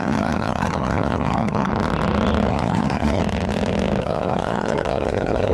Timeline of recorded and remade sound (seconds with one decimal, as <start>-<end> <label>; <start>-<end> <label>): 0.0-1.7 remade; 1.7-2.5 recorded; 2.5-3.2 remade; 3.2-4.0 recorded; 4.0-5.5 remade